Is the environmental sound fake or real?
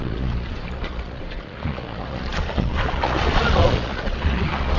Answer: fake